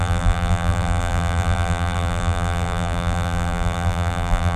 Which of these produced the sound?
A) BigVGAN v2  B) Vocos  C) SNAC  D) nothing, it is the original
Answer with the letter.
A